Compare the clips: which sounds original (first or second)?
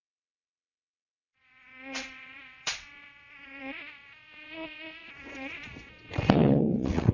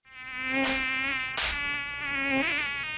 second